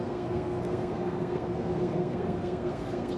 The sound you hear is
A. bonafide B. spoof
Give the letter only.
B